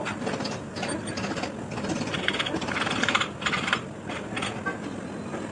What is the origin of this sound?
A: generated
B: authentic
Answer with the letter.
B